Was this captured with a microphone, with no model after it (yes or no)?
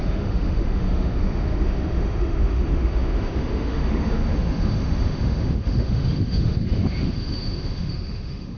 no